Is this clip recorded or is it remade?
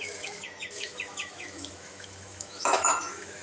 remade